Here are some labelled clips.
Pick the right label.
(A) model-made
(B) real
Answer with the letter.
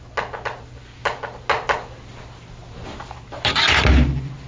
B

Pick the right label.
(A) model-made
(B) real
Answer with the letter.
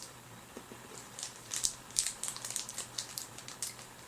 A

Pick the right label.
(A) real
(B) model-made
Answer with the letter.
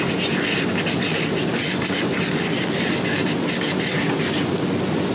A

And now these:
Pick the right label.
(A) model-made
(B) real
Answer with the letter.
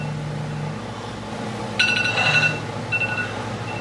B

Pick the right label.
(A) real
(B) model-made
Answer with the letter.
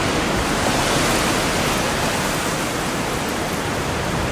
A